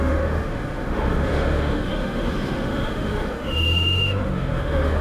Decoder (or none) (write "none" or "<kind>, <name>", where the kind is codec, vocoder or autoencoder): autoencoder, DAC-VAE